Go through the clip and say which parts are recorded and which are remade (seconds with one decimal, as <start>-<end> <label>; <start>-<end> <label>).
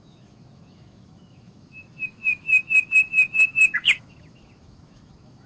0.0-5.5 remade